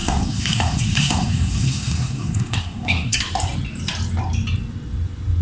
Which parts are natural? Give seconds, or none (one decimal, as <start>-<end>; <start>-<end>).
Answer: 3.2-5.4